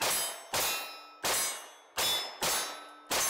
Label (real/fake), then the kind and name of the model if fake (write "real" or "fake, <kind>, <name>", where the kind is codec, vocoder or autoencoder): real